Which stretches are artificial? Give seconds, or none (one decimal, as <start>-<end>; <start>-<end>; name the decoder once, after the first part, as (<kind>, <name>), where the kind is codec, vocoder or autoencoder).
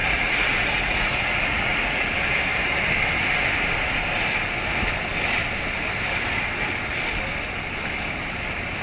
0.0-2.1 (vocoder, Vocos)